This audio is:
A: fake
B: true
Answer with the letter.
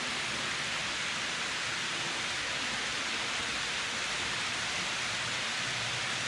B